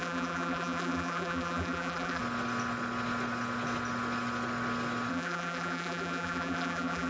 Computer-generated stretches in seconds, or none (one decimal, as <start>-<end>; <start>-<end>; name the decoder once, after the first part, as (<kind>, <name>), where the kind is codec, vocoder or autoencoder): 0.0-2.2 (vocoder, BigVGAN v2); 5.1-7.1